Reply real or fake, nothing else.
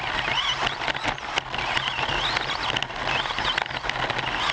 real